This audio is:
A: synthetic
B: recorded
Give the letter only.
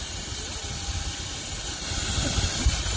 B